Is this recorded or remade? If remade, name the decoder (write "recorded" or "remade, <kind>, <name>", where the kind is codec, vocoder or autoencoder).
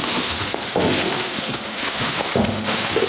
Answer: remade, autoencoder, DAC-VAE